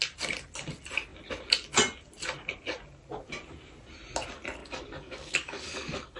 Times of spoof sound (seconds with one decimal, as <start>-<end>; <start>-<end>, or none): 4.6-6.2